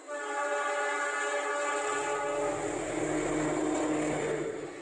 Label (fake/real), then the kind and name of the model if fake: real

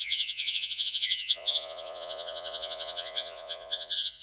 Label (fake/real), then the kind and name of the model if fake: fake, vocoder, Vocos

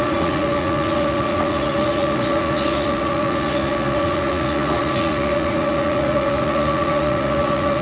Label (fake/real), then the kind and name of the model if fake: fake, vocoder, Vocos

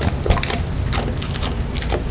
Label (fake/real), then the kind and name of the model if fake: real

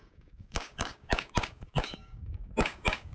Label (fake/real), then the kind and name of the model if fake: fake, codec, DAC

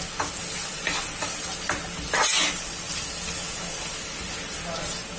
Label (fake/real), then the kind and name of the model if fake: real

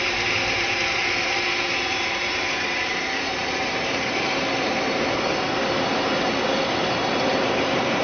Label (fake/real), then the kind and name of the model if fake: fake, vocoder, BigVGAN v2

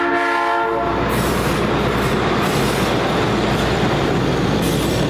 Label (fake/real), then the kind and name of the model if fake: real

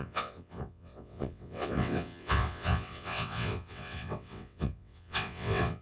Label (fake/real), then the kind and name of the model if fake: fake, vocoder, WaveNeXt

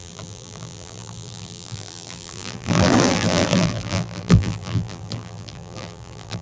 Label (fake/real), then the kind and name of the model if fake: fake, vocoder, BigVGAN v2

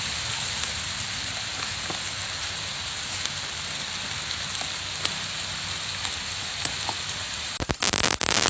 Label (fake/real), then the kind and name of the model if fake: real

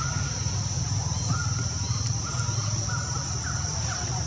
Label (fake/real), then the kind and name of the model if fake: real